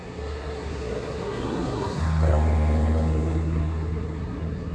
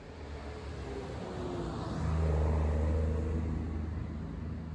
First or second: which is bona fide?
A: second